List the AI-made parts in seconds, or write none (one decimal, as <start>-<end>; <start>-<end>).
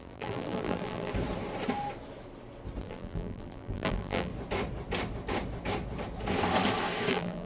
0.0-1.1; 2.8-4.3; 7.1-7.5